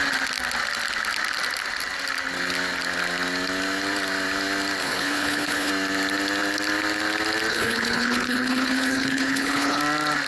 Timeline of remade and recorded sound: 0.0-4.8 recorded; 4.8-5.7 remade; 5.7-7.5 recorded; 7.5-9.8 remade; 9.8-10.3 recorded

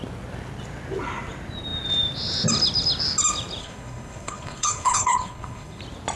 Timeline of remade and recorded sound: 0.0-3.6 recorded; 3.6-5.8 remade; 5.8-6.2 recorded

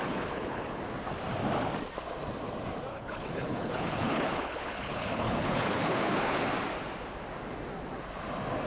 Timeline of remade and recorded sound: 0.0-0.8 remade; 0.8-2.9 recorded; 2.9-6.5 remade; 6.5-8.7 recorded

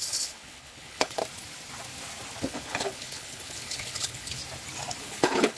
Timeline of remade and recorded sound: 0.0-1.2 remade; 1.2-2.4 recorded; 2.4-4.4 remade; 4.4-5.0 recorded; 5.0-5.6 remade

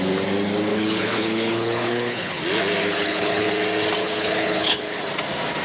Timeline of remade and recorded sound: 0.0-0.7 recorded; 0.7-2.4 remade; 2.4-2.8 recorded; 2.8-3.5 remade; 3.5-4.0 recorded; 4.0-5.0 remade; 5.0-5.6 recorded

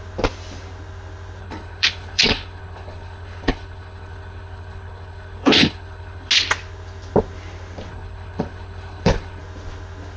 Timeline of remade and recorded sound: 0.0-1.4 recorded; 1.4-6.3 remade; 6.3-7.9 recorded; 7.9-9.4 remade; 9.4-10.2 recorded